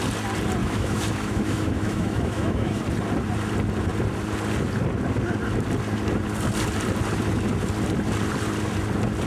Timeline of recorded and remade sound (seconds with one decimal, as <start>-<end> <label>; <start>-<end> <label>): 0.0-0.6 recorded; 0.6-2.8 remade; 2.8-9.3 recorded